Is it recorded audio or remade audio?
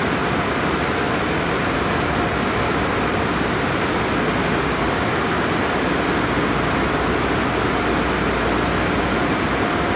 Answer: recorded